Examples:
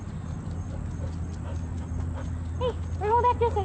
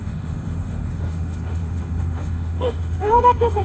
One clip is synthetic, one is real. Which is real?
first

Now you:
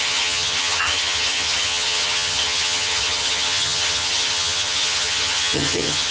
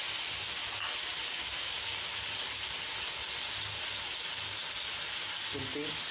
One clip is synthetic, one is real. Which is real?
second